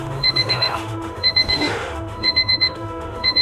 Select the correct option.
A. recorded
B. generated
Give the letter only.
B